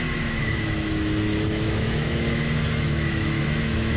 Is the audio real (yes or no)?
no